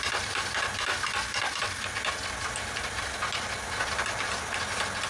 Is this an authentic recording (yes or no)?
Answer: yes